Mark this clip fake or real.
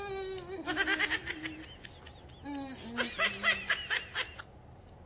real